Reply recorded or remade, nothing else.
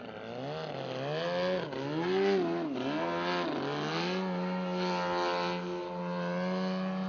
recorded